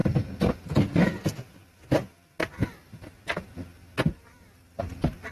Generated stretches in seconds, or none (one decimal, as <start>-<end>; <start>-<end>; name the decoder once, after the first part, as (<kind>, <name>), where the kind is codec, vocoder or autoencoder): none